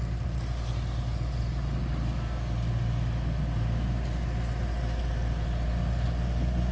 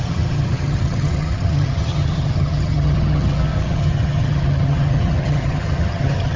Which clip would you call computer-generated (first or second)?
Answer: second